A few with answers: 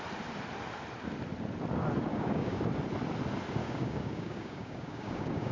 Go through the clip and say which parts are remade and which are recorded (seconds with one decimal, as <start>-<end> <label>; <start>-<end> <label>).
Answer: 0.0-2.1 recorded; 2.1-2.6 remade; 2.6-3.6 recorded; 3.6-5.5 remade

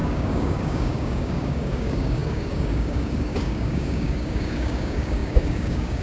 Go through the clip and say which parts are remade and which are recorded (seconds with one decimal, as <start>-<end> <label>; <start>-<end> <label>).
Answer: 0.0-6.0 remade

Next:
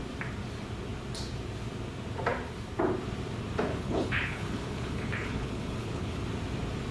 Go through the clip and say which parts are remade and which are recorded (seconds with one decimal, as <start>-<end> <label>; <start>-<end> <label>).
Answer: 0.0-3.7 recorded; 3.7-6.2 remade; 6.2-6.9 recorded

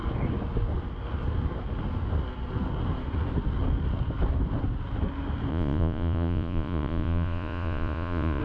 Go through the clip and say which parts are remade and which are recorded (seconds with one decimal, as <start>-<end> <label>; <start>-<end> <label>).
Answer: 0.0-5.5 recorded; 5.5-8.4 remade

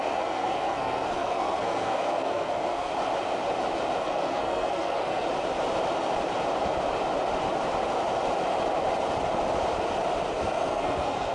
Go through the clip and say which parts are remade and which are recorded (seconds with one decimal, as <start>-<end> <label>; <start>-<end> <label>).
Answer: 0.0-2.9 remade; 2.9-4.0 recorded; 4.0-5.3 remade; 5.3-10.4 recorded; 10.4-11.3 remade